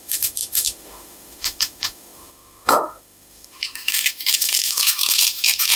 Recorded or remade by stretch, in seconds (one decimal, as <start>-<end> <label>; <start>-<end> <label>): 0.0-5.8 remade